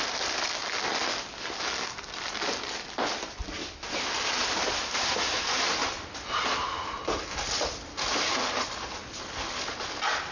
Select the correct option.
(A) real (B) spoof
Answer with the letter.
A